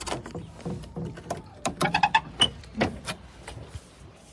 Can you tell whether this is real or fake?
real